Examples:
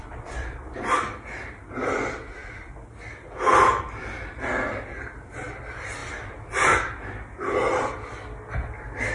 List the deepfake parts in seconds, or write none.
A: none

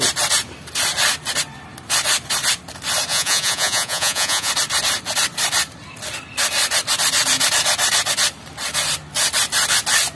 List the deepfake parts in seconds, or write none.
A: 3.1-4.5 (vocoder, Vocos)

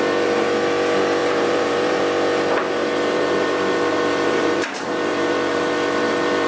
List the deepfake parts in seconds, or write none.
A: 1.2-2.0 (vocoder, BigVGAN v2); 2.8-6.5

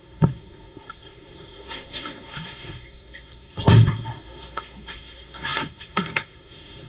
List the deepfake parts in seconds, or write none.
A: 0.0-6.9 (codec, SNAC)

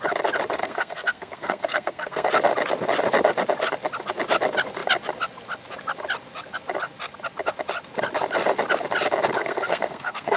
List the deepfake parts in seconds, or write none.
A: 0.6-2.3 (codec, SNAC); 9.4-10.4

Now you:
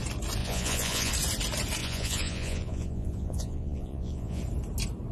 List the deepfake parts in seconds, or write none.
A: 0.4-1.1 (vocoder, Vocos); 1.8-4.4

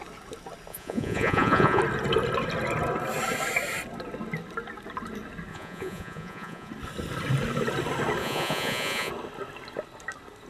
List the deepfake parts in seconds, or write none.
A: 0.7-1.8 (vocoder, Vocos); 5.5-6.7; 8.2-9.1